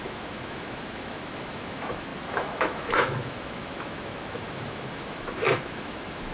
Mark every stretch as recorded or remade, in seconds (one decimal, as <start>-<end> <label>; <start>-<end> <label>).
0.0-6.3 remade